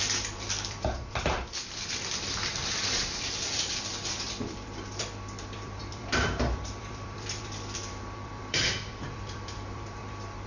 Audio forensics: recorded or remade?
remade